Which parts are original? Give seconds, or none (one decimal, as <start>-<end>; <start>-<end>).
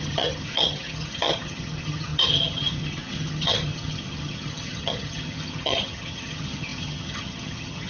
none